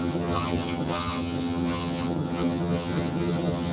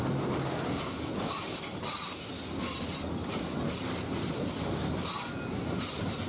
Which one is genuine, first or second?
second